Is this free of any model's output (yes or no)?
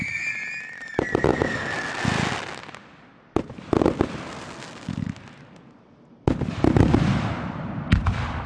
yes